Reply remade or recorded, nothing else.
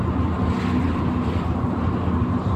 recorded